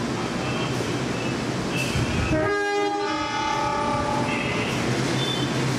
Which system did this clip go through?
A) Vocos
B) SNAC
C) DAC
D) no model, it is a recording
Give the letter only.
D